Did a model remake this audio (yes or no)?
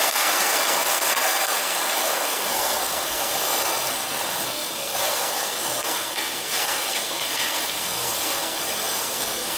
yes